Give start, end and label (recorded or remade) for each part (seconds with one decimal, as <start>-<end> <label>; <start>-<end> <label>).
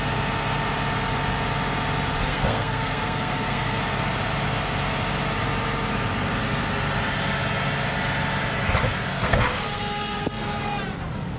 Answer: 0.0-2.2 recorded; 2.2-3.8 remade; 3.8-9.1 recorded; 9.1-10.6 remade; 10.6-11.4 recorded